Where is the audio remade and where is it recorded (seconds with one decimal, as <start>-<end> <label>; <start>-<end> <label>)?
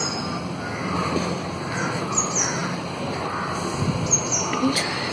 0.0-5.1 recorded